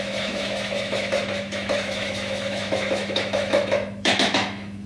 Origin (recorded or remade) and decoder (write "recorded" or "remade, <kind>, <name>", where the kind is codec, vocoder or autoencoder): remade, autoencoder, DAC-VAE